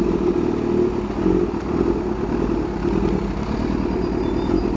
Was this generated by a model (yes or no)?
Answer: no